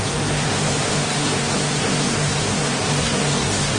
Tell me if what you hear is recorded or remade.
remade